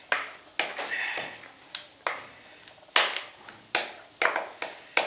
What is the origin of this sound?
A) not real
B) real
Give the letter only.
B